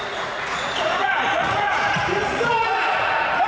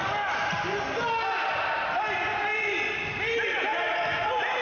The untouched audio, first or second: second